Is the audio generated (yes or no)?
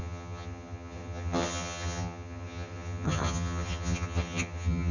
yes